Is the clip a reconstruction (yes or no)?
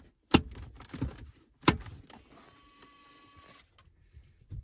no